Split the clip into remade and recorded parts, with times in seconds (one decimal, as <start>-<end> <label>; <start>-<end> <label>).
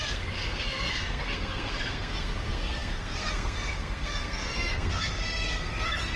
0.0-6.2 remade